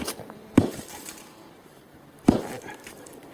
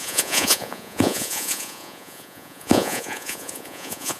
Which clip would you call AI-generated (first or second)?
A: second